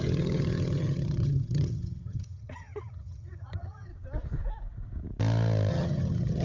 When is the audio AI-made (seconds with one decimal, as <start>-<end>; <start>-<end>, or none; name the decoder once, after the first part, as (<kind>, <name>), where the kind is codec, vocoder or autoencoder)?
0.0-3.9 (vocoder, HiFi-GAN); 5.7-6.4